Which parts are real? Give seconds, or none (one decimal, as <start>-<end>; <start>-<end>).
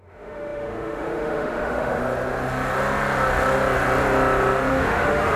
2.0-4.7